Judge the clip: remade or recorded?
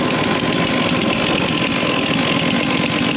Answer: recorded